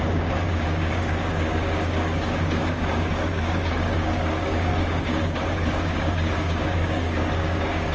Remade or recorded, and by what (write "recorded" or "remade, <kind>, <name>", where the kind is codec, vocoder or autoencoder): remade, codec, DAC